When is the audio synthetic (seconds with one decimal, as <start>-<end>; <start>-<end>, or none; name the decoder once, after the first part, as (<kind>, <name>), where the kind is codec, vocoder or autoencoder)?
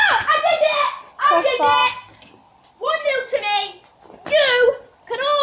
none